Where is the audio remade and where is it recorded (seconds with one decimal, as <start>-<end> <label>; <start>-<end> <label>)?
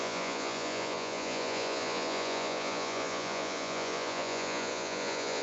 0.0-5.4 remade